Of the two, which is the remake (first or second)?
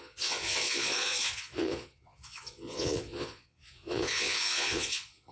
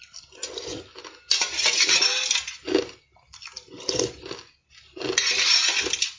first